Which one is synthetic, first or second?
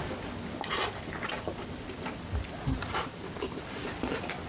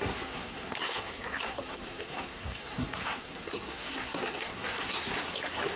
second